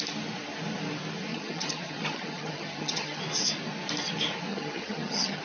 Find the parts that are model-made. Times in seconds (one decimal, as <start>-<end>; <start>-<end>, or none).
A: 1.3-3.2; 4.5-5.4